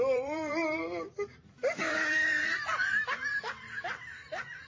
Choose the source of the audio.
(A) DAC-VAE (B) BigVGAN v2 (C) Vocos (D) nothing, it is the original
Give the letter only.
B